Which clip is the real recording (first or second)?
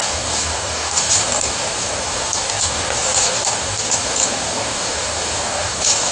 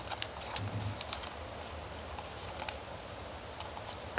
second